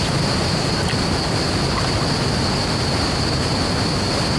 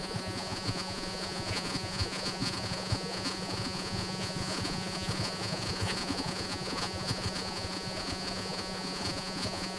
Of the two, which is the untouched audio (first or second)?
first